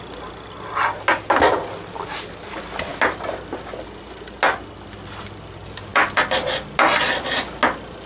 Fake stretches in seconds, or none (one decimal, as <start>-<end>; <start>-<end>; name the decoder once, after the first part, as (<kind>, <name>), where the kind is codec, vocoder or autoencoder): none

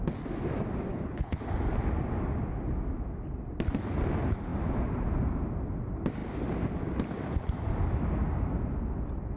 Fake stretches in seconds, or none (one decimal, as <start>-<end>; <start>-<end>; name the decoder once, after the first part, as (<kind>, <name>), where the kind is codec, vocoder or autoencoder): 0.9-1.4 (codec, HILCodec)

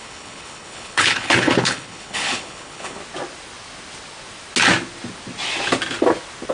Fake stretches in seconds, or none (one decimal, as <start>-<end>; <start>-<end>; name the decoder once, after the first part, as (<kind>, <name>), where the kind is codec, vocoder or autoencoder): 0.0-3.0 (codec, HILCodec)

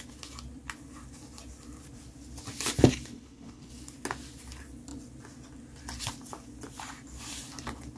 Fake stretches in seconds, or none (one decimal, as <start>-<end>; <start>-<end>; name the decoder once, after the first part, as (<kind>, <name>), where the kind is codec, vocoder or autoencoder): 3.1-3.7 (codec, HILCodec)